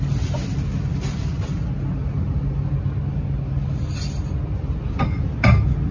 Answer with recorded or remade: recorded